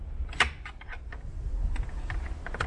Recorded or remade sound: recorded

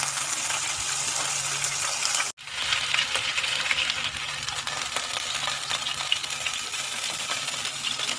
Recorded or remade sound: recorded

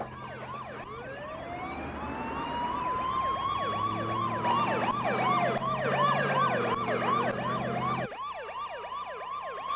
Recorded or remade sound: recorded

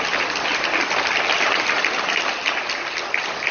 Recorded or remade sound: recorded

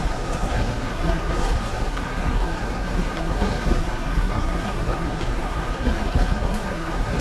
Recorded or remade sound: remade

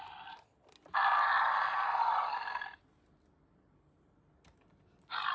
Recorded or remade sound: recorded